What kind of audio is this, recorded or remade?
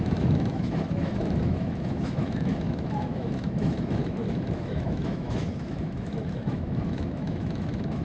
remade